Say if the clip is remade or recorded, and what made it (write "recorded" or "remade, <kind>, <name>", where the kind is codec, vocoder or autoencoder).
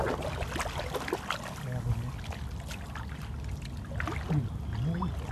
recorded